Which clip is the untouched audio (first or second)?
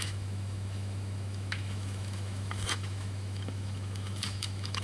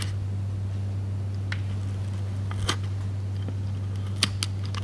second